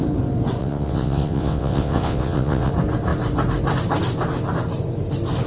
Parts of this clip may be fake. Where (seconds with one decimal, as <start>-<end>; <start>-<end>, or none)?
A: 0.6-2.7